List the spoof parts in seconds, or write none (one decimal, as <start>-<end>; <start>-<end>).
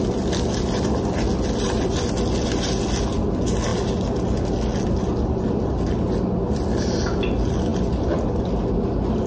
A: none